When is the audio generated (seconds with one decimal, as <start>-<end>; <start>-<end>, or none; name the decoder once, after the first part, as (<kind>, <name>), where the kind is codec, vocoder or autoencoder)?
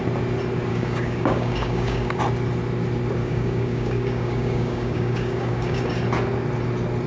0.7-2.2 (codec, DAC); 3.2-5.8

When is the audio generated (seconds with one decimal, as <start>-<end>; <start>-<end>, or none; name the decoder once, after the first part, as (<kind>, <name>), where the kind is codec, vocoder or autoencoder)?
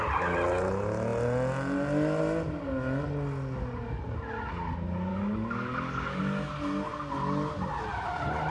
5.1-6.2 (codec, DAC)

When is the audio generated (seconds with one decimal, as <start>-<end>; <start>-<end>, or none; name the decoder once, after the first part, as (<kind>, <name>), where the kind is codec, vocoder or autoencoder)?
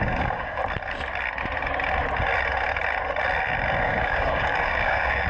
0.0-0.6 (codec, DAC); 3.8-5.3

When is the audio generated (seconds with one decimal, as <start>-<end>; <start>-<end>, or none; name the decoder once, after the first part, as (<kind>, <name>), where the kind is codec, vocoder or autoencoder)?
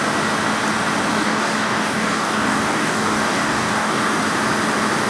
1.1-4.2 (codec, DAC)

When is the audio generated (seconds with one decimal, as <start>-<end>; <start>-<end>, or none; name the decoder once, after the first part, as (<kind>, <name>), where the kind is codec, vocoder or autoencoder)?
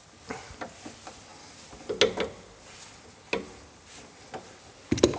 none